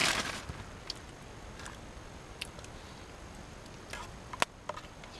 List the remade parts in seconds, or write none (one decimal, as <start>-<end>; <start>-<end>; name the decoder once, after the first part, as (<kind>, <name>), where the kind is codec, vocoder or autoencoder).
none